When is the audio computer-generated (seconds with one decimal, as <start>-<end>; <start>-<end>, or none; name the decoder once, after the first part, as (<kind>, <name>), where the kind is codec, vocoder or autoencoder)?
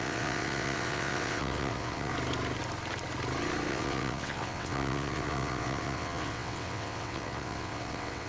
0.0-2.1 (vocoder, WaveNeXt); 3.7-8.3